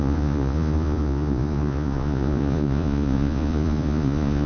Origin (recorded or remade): remade